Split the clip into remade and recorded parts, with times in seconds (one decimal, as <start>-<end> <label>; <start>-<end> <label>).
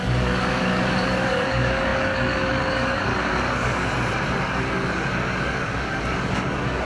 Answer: 0.0-3.8 remade; 3.8-4.4 recorded; 4.4-6.8 remade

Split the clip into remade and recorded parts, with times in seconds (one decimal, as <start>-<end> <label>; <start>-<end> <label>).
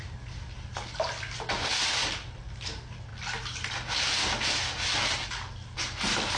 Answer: 0.0-6.4 recorded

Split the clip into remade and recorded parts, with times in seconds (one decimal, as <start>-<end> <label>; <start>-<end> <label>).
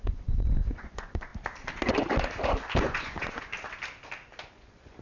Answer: 0.0-1.3 remade; 1.3-2.8 recorded; 2.8-3.5 remade; 3.5-4.5 recorded; 4.5-5.0 remade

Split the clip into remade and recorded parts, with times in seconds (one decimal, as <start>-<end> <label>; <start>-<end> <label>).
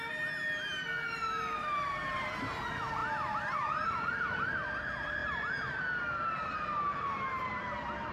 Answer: 0.0-3.0 recorded; 3.0-4.8 remade; 4.8-5.2 recorded; 5.2-5.8 remade; 5.8-8.1 recorded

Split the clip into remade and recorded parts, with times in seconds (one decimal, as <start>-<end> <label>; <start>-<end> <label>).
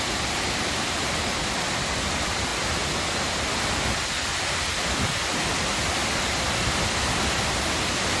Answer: 0.0-8.2 recorded